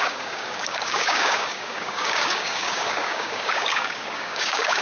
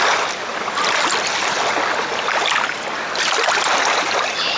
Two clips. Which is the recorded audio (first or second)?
second